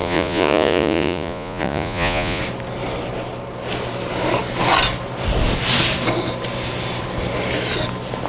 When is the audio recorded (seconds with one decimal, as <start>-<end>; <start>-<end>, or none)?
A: 2.4-8.3